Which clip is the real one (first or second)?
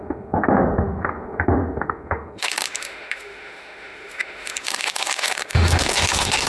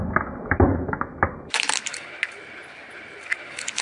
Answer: second